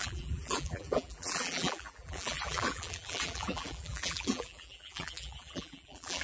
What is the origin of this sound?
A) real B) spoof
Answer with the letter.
B